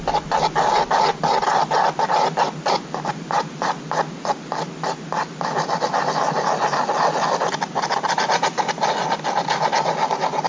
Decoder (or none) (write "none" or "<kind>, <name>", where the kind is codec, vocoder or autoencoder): none